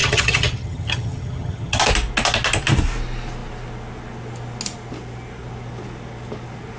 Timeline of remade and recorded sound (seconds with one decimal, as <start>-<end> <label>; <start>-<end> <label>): 0.0-1.8 remade; 1.8-6.8 recorded